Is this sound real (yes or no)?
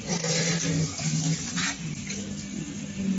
yes